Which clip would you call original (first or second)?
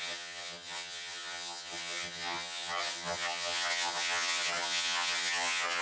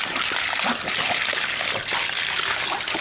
second